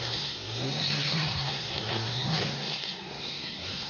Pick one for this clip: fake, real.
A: fake